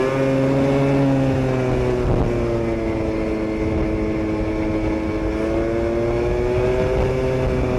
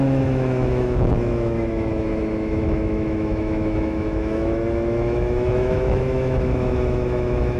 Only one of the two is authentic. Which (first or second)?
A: first